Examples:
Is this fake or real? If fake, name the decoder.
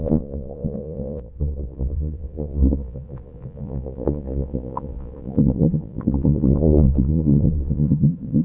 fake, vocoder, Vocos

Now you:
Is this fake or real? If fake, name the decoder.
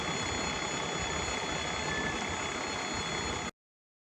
real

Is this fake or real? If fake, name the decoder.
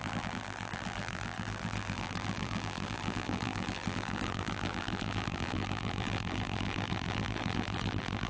fake, vocoder, BigVGAN v2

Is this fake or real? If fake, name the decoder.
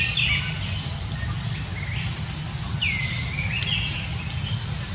real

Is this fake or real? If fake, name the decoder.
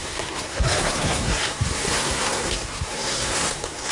fake, codec, SNAC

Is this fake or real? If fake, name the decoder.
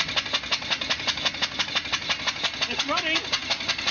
real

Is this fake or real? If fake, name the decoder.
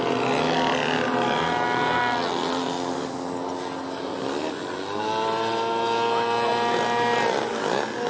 real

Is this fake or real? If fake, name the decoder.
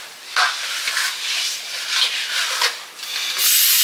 real